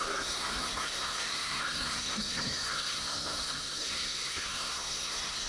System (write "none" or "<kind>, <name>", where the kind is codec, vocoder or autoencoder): codec, SNAC